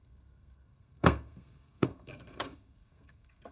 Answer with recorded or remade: remade